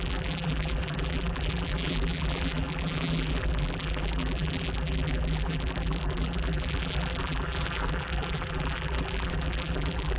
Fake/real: fake